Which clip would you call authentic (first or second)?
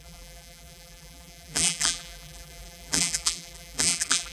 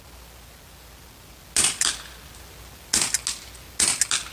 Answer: second